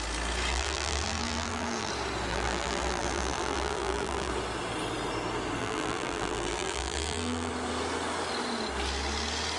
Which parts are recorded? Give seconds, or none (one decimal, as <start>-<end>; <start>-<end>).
0.0-0.5; 1.9-2.3; 4.3-5.6; 7.5-9.6